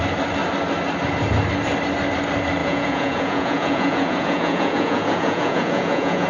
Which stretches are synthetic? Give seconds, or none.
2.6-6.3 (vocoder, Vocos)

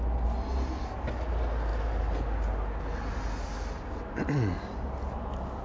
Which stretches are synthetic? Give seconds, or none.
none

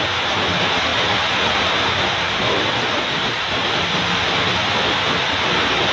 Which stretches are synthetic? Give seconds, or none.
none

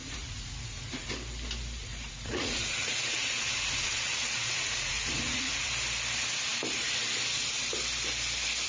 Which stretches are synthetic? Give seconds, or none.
0.0-1.1 (vocoder, Vocos); 1.8-5.7

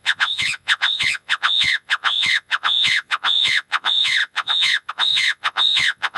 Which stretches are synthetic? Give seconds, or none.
0.0-6.2 (vocoder, Vocos)

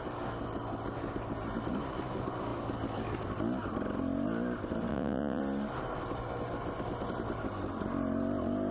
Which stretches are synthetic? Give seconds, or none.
4.9-5.4 (vocoder, Vocos)

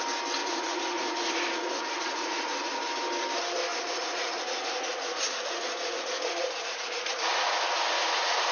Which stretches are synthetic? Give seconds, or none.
0.4-2.9 (vocoder, Vocos); 3.7-8.5

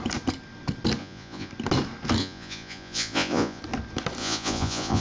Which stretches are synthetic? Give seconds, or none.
1.0-1.5 (vocoder, Vocos); 2.2-3.6; 4.2-5.0